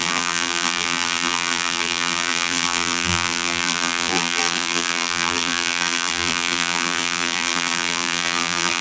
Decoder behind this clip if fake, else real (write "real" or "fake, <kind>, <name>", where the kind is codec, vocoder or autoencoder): fake, vocoder, BigVGAN v2